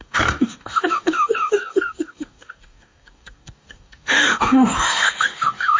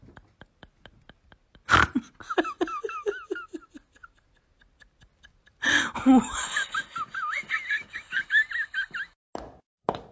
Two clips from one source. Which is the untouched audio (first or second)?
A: second